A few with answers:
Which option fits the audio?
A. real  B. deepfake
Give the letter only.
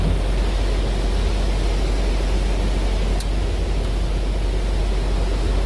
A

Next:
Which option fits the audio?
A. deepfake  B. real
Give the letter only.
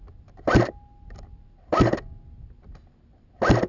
B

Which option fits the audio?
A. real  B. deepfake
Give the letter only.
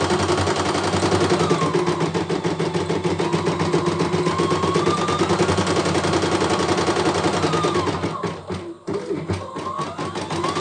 A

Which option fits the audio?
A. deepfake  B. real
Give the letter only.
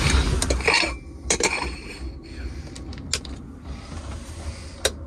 B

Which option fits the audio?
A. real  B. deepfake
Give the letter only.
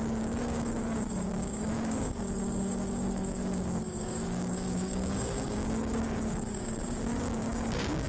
B